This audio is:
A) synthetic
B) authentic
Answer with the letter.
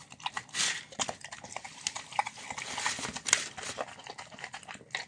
B